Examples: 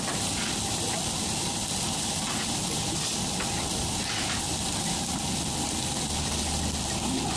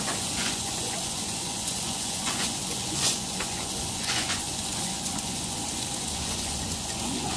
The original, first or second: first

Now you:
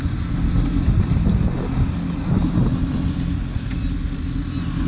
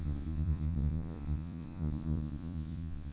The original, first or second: first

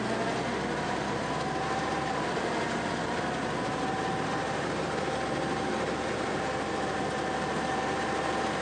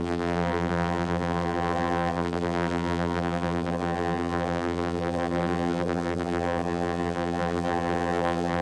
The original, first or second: first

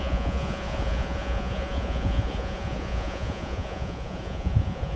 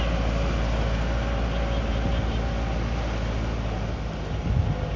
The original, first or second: second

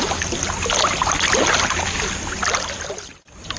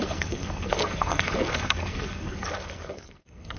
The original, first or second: first